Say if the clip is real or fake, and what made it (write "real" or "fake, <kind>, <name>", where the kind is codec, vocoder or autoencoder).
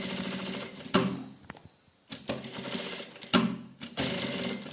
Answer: real